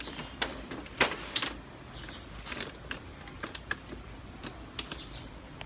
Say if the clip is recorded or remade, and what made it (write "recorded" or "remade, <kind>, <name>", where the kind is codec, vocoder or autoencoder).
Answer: recorded